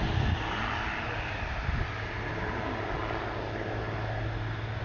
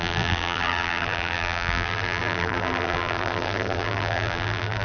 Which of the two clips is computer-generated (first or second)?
second